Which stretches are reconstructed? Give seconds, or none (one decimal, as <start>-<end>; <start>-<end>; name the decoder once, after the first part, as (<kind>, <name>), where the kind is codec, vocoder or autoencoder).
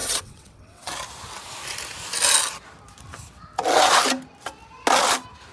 0.0-0.9 (vocoder, WaveNeXt)